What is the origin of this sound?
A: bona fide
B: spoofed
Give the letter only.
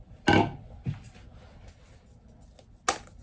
A